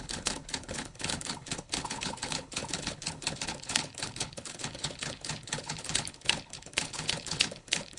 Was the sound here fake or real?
fake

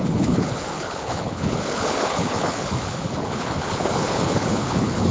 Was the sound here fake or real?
fake